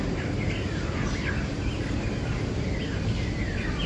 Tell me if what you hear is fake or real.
real